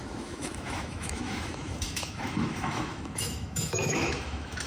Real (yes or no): no